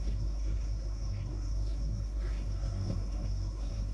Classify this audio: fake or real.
fake